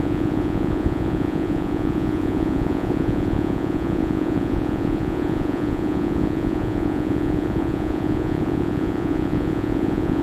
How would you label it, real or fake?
fake